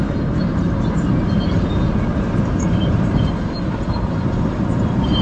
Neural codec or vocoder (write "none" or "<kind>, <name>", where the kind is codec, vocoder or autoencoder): vocoder, BigVGAN v2